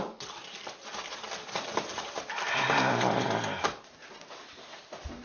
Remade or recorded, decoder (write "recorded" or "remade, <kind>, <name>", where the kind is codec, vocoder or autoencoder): recorded